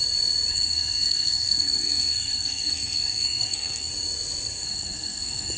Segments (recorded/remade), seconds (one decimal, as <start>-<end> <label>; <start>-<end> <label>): 0.0-0.5 recorded; 0.5-3.9 remade; 3.9-4.6 recorded; 4.6-5.6 remade